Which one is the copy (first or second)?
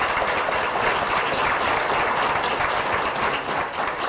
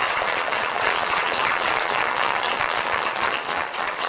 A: second